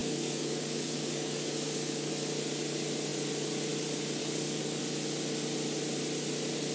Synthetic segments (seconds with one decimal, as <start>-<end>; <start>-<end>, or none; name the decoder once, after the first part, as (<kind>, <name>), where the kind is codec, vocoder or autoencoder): 0.0-2.1 (codec, DAC); 4.2-4.8